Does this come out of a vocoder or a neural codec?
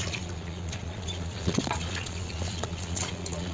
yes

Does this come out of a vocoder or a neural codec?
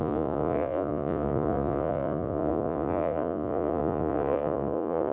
yes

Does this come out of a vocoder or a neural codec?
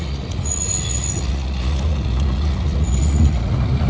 yes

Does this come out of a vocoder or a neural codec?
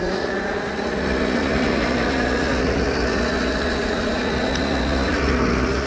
yes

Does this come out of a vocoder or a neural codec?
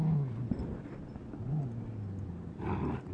no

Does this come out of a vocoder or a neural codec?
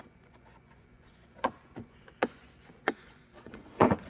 yes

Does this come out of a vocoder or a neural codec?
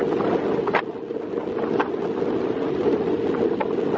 no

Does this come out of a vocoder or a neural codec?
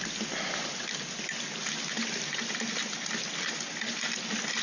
no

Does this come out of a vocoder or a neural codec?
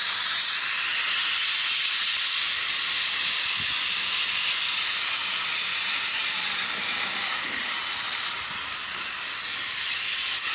no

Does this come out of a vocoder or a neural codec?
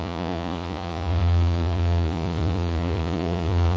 yes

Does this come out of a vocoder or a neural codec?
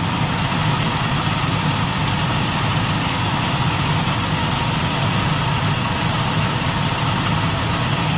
no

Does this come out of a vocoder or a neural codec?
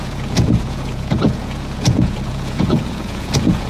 yes